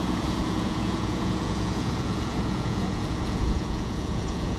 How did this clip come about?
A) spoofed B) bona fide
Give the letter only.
A